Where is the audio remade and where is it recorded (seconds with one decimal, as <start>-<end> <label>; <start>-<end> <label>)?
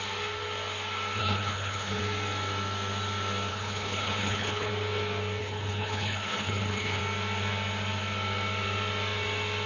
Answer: 0.0-1.2 recorded; 1.2-2.0 remade; 2.0-3.5 recorded; 3.5-4.7 remade; 4.7-5.4 recorded; 5.4-7.0 remade; 7.0-9.7 recorded